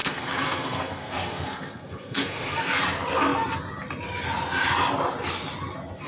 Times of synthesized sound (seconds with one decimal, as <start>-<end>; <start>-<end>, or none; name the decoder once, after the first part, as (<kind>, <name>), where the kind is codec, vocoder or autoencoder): 0.0-2.6 (codec, SNAC)